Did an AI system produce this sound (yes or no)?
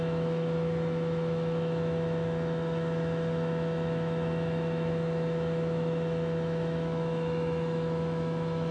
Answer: yes